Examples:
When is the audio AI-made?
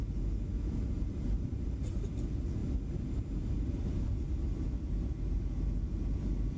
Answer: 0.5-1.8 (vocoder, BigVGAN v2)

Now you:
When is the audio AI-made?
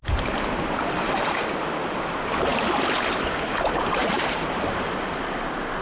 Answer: 4.0-5.8 (vocoder, BigVGAN v2)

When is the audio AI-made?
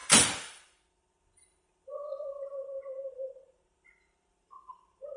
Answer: 0.0-5.2 (vocoder, BigVGAN v2)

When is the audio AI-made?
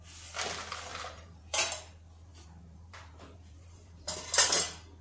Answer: 0.9-1.6 (vocoder, BigVGAN v2); 2.3-4.1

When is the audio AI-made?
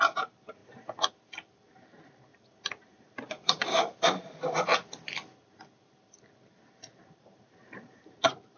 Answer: 0.0-0.6 (vocoder, BigVGAN v2); 1.5-2.3; 3.0-4.7; 6.7-8.6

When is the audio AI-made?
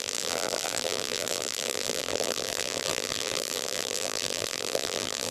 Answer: 0.0-5.3 (vocoder, BigVGAN v2)